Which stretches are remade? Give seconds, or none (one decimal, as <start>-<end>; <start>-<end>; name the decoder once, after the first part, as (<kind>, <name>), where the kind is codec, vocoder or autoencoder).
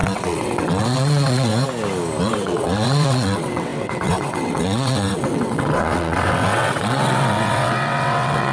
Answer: 0.0-1.5 (vocoder, WaveNeXt); 2.2-8.5